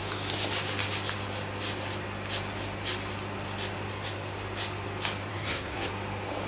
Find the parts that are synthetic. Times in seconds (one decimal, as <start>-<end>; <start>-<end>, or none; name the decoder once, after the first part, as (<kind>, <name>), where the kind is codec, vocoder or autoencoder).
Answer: 5.3-5.9 (codec, SNAC)